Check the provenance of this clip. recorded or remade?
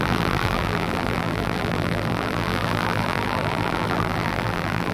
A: remade